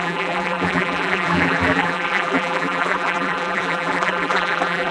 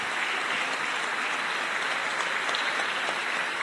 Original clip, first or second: second